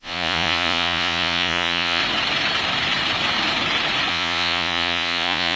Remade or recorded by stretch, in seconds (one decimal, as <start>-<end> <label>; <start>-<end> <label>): 0.0-2.0 remade; 2.0-4.1 recorded; 4.1-5.6 remade

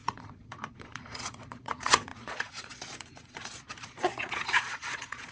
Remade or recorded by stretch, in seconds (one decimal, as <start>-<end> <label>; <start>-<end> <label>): 0.0-5.3 remade

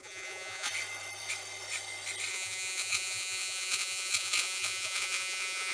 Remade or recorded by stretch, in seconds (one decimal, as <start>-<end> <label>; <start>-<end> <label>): 0.0-0.7 remade; 0.7-2.3 recorded; 2.3-5.7 remade

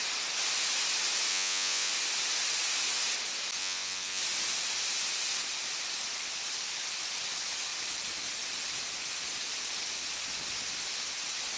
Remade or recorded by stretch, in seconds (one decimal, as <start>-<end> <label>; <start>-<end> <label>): 0.0-1.3 recorded; 1.3-1.9 remade; 1.9-3.6 recorded; 3.6-4.2 remade; 4.2-11.6 recorded

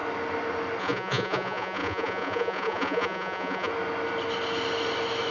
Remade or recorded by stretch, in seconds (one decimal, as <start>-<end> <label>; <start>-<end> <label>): 0.0-0.8 recorded; 0.8-3.7 remade; 3.7-5.3 recorded

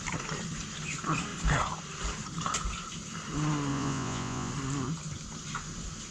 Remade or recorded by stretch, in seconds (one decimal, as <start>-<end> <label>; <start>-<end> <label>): 0.0-3.7 recorded; 3.7-4.5 remade; 4.5-6.1 recorded

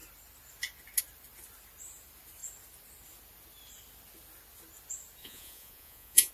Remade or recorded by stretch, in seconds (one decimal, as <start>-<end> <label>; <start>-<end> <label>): 0.0-5.2 recorded; 5.2-6.3 remade

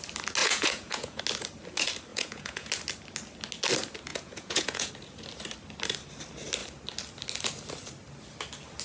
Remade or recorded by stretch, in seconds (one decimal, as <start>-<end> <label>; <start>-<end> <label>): 0.0-0.4 recorded; 0.4-1.2 remade; 1.2-2.1 recorded; 2.1-2.7 remade; 2.7-4.1 recorded; 4.1-4.9 remade; 4.9-8.8 recorded